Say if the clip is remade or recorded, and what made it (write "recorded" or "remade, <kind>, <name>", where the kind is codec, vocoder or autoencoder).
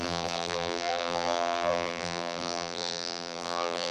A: remade, vocoder, BigVGAN v2